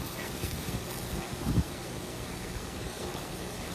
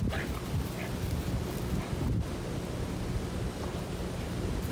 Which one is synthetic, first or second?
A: first